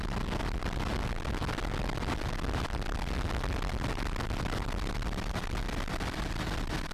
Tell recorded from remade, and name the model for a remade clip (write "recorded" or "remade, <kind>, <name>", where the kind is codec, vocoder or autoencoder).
recorded